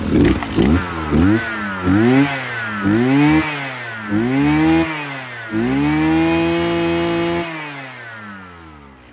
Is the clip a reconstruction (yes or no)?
no